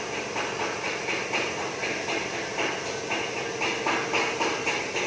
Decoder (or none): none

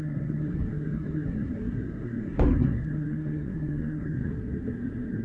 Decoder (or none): codec, SNAC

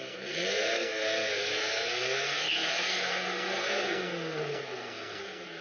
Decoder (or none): codec, SNAC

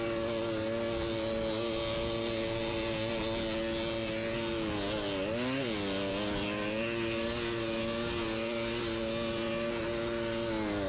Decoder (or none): none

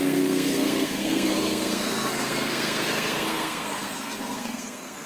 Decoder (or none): codec, SNAC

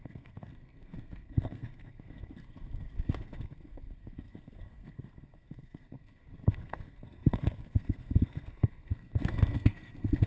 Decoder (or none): codec, SNAC